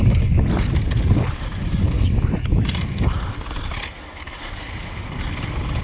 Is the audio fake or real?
real